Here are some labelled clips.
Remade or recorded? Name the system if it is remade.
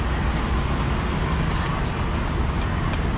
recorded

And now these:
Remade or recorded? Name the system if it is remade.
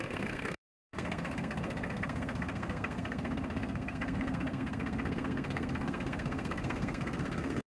remade, codec, SNAC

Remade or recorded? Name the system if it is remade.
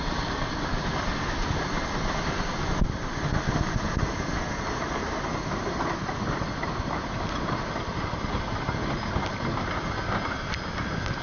recorded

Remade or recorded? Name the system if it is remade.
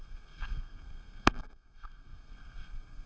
remade, codec, SNAC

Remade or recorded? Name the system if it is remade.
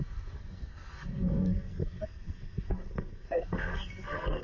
remade, codec, SNAC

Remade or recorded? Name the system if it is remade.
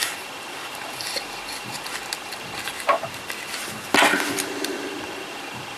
recorded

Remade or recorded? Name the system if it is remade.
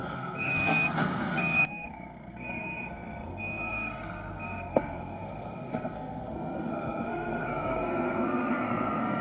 remade, codec, SNAC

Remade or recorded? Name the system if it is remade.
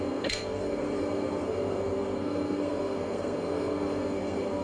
remade, codec, SNAC